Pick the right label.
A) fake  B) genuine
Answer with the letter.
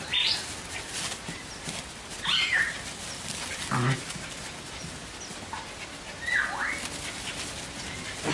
B